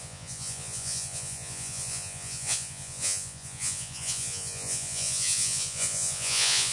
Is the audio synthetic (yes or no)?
yes